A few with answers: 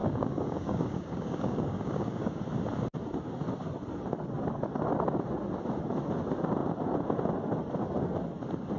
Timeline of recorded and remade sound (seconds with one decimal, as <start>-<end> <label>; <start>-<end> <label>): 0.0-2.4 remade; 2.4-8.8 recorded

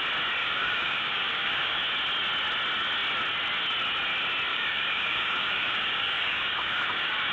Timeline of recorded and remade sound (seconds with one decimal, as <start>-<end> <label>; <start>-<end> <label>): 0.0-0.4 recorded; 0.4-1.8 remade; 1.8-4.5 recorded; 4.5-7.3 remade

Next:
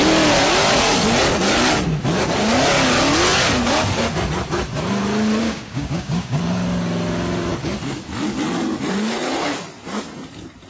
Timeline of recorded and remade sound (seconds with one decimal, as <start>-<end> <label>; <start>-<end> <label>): 0.0-5.4 recorded; 5.4-6.4 remade; 6.4-10.7 recorded